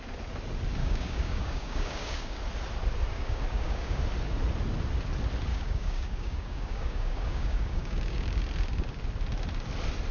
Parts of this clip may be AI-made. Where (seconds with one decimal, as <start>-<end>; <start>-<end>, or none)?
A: 0.8-2.4; 3.1-4.0; 5.5-8.4